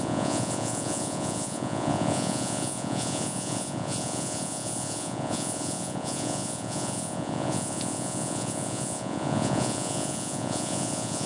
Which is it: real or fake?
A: fake